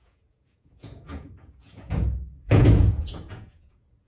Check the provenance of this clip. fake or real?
fake